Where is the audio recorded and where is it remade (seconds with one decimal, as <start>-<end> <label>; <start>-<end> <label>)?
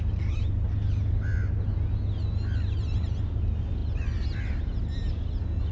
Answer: 0.0-5.7 recorded